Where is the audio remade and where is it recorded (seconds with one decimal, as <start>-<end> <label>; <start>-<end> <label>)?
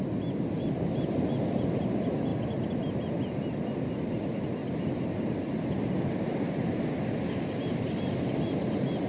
0.0-9.1 recorded